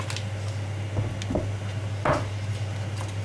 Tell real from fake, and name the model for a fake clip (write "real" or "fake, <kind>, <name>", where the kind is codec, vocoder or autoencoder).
real